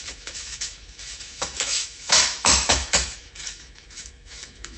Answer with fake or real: fake